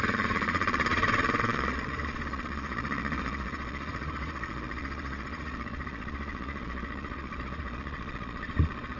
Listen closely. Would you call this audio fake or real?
fake